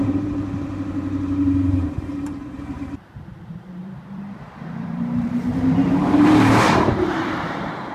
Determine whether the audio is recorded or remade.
remade